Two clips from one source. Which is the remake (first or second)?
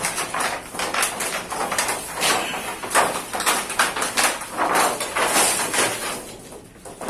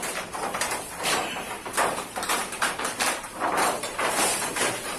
second